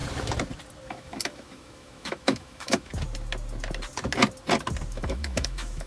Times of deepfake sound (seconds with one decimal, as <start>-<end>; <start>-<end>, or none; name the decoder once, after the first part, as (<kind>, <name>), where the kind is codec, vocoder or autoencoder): 0.9-2.9 (autoencoder, DAC-VAE); 4.9-5.9